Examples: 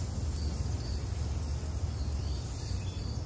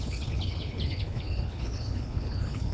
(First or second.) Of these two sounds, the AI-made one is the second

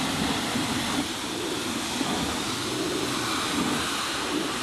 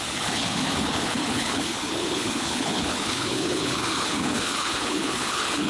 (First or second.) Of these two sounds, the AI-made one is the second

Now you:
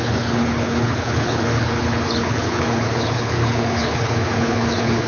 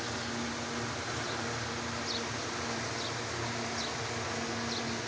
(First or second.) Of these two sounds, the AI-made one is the first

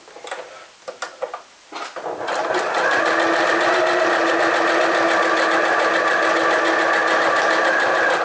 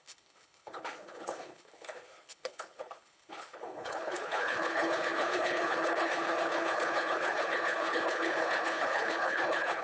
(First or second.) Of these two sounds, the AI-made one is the second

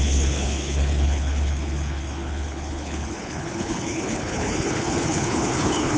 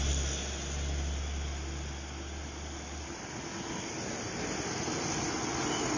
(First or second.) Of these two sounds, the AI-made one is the first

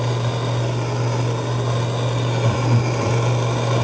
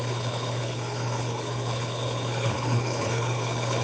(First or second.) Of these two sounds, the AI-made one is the second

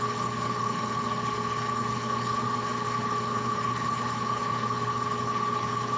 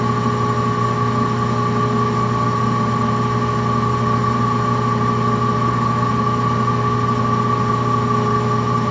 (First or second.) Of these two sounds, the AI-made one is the first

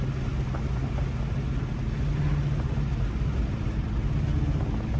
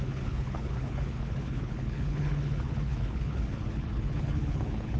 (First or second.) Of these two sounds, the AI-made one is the second